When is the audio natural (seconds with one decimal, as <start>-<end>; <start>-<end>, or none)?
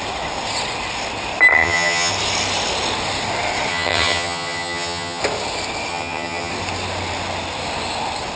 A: 0.0-1.5; 2.1-3.7; 5.2-5.9; 6.5-8.4